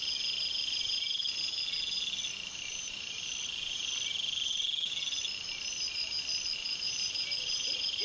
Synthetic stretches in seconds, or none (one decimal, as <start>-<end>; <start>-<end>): 2.7-3.3; 6.6-8.0

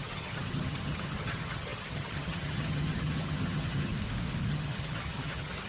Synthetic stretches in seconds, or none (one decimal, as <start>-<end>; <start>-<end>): 0.0-3.9; 4.5-5.7

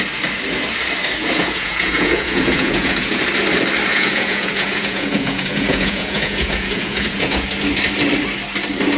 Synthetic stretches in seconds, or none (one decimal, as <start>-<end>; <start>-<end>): 1.2-3.2; 3.9-7.5

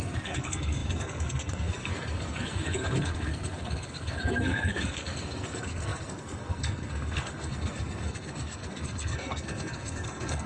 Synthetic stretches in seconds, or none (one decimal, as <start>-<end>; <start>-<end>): 0.0-10.5

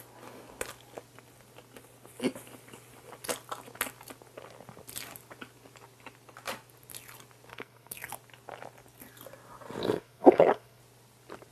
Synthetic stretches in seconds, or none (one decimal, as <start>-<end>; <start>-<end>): 7.5-8.1; 9.8-10.8

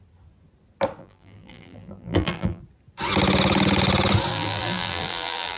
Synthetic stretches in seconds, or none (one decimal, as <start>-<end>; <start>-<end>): 1.0-2.6; 4.3-5.6